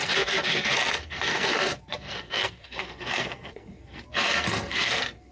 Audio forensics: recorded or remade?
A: remade